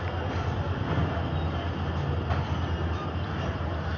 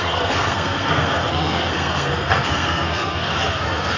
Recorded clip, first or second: first